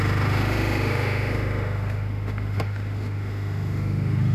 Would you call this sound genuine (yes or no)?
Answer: no